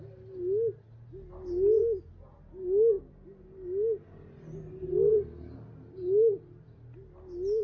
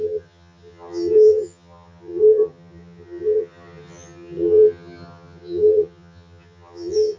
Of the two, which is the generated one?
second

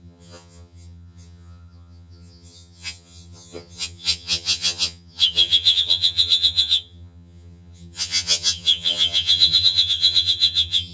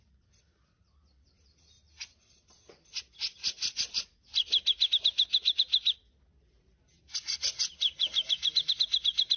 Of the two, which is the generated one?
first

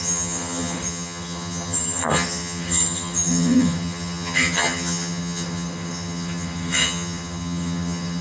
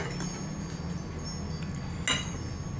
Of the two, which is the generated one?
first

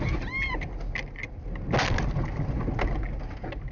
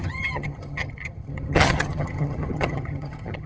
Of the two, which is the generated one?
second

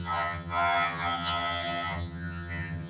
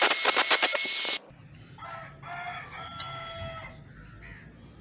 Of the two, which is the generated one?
first